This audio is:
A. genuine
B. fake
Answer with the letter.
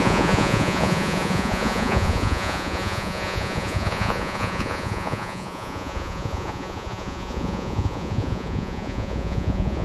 B